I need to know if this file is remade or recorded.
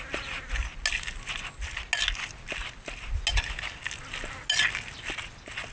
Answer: recorded